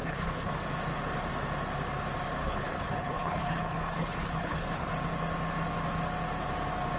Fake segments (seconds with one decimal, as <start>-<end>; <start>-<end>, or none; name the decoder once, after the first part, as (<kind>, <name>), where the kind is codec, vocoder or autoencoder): 0.0-0.5 (codec, HILCodec); 2.4-4.9

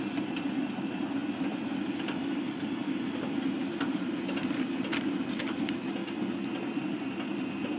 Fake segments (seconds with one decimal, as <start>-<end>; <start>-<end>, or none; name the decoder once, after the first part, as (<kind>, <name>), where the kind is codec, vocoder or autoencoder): 0.0-1.2 (vocoder, BigVGAN v2); 1.9-6.0; 7.3-7.8

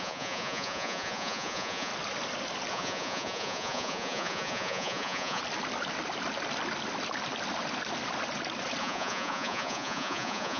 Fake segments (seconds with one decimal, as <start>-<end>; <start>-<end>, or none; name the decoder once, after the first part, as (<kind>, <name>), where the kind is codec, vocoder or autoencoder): 0.0-1.9 (vocoder, Vocos); 2.7-5.4; 8.8-10.6

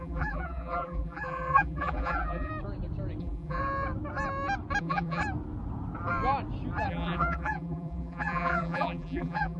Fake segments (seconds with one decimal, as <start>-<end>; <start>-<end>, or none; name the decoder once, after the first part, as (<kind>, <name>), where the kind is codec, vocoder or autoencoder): 0.0-2.5 (vocoder, BigVGAN v2); 3.2-3.6; 4.8-5.2; 6.9-9.6

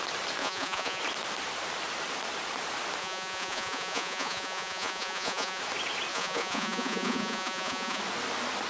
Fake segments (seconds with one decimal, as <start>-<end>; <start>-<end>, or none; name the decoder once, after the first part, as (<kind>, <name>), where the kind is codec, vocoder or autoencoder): 0.4-1.0 (vocoder, Vocos); 3.0-5.6; 6.1-8.0